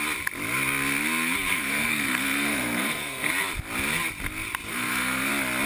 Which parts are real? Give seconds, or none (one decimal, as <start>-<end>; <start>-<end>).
0.0-1.5; 3.3-4.7; 5.3-5.7